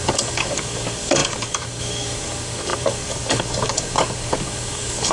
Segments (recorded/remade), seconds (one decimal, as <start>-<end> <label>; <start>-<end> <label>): 0.0-5.1 remade